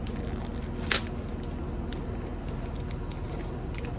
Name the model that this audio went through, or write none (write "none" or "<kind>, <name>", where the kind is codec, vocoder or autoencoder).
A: none